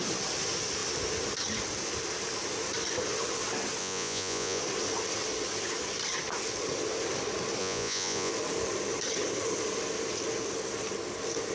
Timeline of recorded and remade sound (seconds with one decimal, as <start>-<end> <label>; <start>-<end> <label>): 0.0-3.8 recorded; 3.8-4.6 remade; 4.6-7.6 recorded; 7.6-8.3 remade; 8.3-11.5 recorded